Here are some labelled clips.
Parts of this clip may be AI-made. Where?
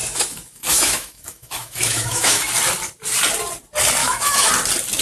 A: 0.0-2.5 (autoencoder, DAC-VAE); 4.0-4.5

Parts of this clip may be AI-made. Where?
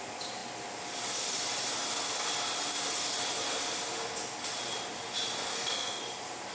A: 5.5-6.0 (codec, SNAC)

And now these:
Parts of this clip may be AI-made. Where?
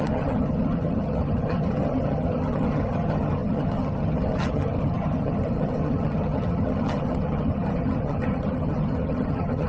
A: 0.0-9.7 (vocoder, HiFi-GAN)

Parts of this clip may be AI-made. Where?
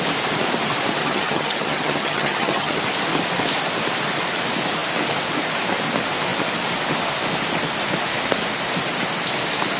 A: 1.0-2.8 (vocoder, HiFi-GAN)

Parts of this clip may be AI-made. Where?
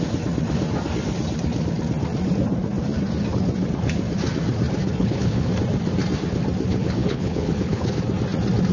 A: 5.0-5.5 (codec, HILCodec); 6.7-8.0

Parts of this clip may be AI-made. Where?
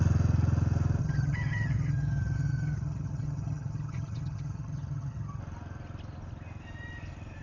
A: 1.0-5.4 (vocoder, HiFi-GAN)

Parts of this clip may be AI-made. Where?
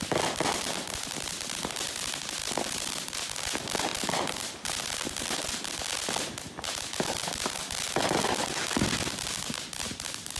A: none